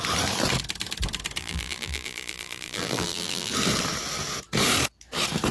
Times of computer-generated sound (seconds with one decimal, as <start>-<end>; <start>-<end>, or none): 1.4-3.5